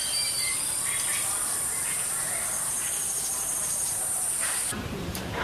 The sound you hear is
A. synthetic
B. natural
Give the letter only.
A